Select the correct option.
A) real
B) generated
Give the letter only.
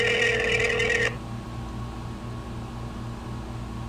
A